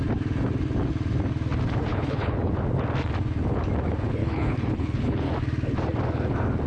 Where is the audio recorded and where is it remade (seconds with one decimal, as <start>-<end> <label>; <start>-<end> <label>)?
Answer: 0.0-1.9 recorded; 1.9-2.5 remade; 2.5-4.2 recorded; 4.2-5.3 remade; 5.3-6.7 recorded